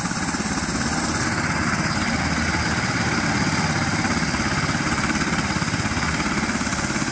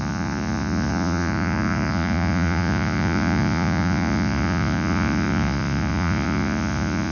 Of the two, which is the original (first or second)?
first